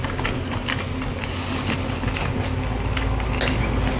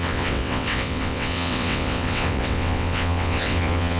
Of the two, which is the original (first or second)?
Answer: first